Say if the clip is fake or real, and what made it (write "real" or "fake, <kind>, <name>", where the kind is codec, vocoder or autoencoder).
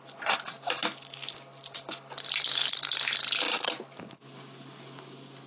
real